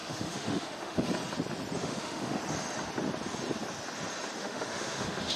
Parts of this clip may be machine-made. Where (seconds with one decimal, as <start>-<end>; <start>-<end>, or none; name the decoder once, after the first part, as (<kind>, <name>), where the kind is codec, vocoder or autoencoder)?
0.0-1.1 (autoencoder, DAC-VAE); 1.8-2.4; 4.4-5.4